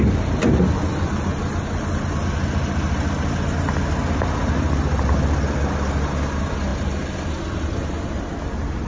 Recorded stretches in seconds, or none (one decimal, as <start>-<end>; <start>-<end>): 0.0-8.9